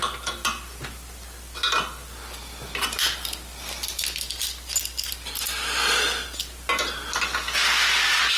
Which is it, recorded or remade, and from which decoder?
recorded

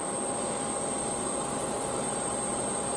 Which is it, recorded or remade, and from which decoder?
recorded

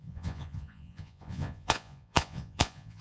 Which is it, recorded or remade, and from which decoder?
remade, vocoder, Vocos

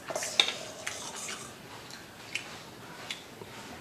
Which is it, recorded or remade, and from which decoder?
recorded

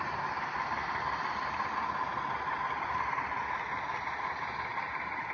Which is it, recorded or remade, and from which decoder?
recorded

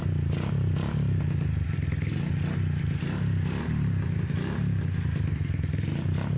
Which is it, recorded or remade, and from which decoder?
recorded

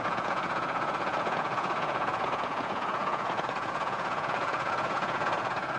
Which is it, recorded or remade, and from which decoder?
remade, vocoder, Vocos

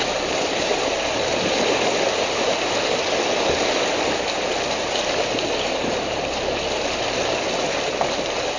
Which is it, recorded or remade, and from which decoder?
recorded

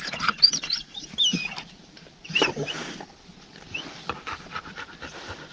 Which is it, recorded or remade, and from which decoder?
recorded